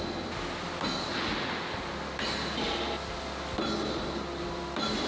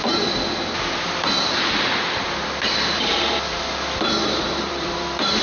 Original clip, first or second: first